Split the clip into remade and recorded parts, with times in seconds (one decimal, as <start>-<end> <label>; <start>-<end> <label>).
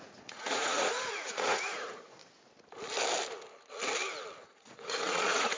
0.0-2.2 remade; 2.2-4.4 recorded; 4.4-5.6 remade